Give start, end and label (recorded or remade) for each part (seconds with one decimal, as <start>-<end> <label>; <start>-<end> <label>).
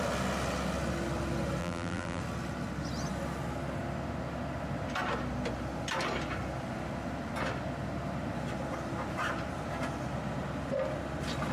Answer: 0.0-1.6 recorded; 1.6-2.2 remade; 2.2-11.5 recorded